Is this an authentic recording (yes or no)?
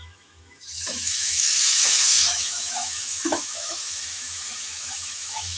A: no